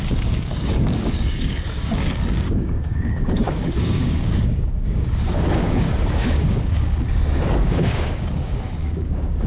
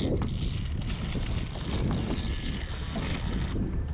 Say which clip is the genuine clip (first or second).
second